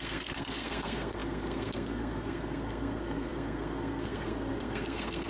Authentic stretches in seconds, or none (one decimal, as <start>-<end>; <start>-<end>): none